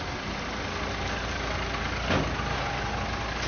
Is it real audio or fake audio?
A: real